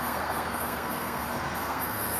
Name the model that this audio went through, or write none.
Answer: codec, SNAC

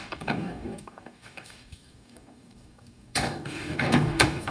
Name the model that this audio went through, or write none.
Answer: codec, DAC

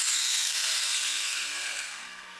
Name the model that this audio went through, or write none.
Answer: codec, SNAC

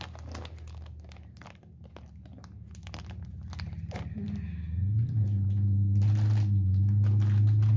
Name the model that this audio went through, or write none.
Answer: none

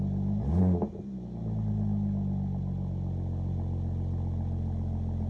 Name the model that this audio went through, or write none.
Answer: none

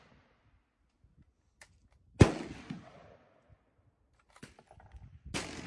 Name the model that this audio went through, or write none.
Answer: none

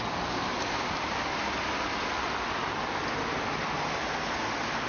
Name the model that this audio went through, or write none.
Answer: none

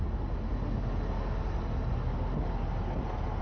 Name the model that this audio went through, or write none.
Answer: none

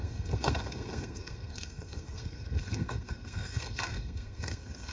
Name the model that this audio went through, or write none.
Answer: codec, SNAC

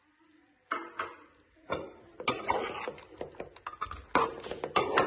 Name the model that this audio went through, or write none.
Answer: none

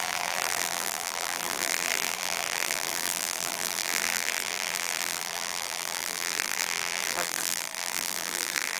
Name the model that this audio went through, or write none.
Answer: vocoder, BigVGAN v2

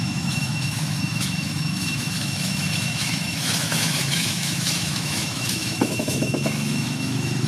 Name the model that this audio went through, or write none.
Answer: autoencoder, DAC-VAE